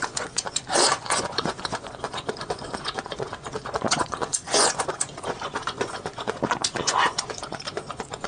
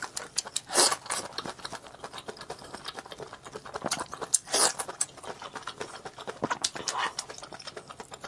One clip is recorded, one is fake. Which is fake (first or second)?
first